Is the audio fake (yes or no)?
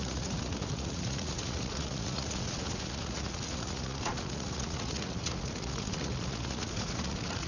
yes